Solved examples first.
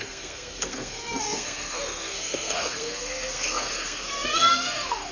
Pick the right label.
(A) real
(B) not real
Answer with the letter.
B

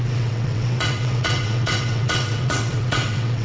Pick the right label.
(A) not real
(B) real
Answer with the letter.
A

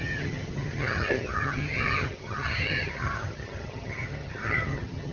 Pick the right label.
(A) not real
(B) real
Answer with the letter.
A